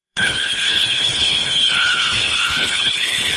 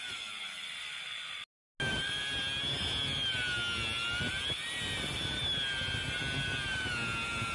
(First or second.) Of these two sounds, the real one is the second